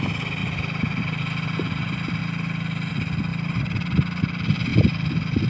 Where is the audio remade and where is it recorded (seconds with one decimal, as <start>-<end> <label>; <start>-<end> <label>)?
0.0-0.4 recorded; 0.4-1.2 remade; 1.2-4.7 recorded; 4.7-5.5 remade